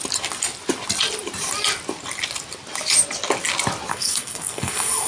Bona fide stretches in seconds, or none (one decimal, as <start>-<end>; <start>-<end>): 0.0-3.9